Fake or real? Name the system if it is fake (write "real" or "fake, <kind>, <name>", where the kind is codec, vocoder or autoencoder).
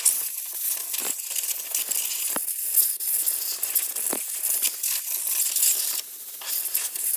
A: real